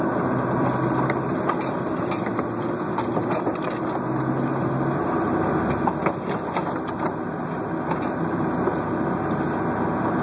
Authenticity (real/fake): real